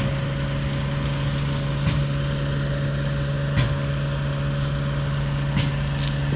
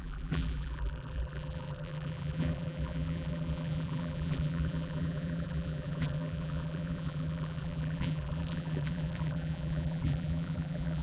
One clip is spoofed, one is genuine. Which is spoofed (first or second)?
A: second